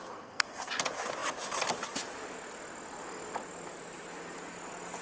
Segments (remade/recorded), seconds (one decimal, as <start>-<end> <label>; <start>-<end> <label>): 0.0-0.7 remade; 0.7-5.0 recorded

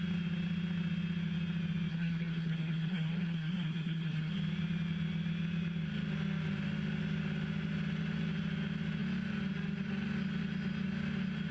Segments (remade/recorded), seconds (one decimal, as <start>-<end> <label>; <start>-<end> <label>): 0.0-1.9 recorded; 1.9-4.3 remade; 4.3-11.5 recorded